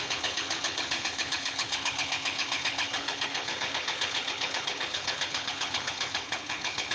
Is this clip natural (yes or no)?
no